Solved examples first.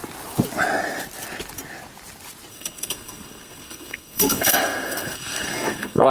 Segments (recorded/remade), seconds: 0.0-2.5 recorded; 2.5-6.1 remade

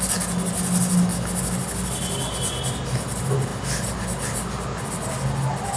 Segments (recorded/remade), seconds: 0.0-5.8 recorded

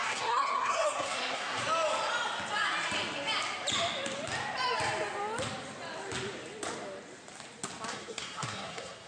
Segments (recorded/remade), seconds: 0.0-1.6 remade; 1.6-7.9 recorded; 7.9-9.1 remade

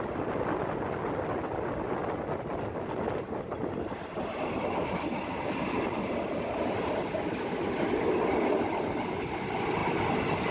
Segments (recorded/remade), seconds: 0.0-10.5 recorded